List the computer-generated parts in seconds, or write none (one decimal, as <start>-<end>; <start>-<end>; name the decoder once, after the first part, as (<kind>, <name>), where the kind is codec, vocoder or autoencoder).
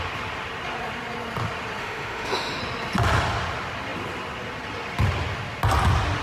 1.8-2.6 (autoencoder, DAC-VAE)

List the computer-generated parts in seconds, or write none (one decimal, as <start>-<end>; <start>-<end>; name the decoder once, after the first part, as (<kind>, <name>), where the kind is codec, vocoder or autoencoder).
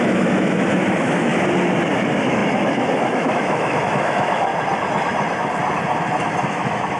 0.0-1.3 (autoencoder, DAC-VAE); 2.0-4.5; 6.5-7.0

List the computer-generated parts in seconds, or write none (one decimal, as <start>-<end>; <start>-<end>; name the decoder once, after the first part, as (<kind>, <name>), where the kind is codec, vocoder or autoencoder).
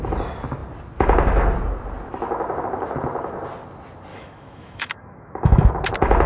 4.1-5.7 (autoencoder, DAC-VAE)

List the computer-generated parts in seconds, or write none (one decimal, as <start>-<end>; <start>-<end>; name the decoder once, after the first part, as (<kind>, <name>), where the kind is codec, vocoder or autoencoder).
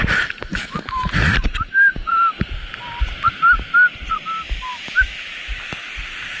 0.5-1.1 (autoencoder, DAC-VAE); 4.7-5.6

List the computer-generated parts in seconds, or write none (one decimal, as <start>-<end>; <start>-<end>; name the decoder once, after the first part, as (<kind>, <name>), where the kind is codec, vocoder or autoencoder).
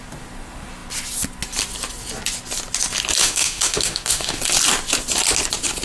3.2-4.4 (autoencoder, DAC-VAE)